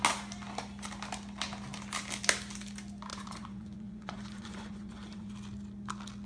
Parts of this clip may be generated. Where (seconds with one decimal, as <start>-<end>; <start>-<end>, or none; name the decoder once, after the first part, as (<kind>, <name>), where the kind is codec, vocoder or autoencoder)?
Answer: 3.1-5.3 (vocoder, Vocos)